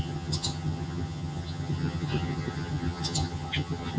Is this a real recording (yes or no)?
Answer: no